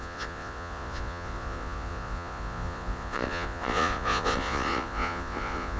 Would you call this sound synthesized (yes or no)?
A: yes